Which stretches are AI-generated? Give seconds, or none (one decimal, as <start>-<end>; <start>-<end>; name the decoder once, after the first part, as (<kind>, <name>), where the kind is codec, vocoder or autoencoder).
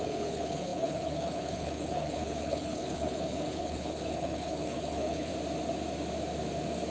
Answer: 0.0-5.3 (codec, HILCodec)